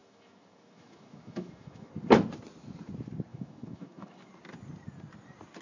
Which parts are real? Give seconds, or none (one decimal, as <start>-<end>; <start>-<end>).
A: 1.9-3.3; 4.3-5.6